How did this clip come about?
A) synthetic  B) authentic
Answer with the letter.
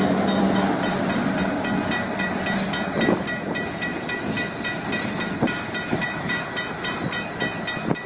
A